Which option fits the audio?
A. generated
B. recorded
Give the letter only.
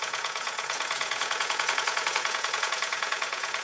A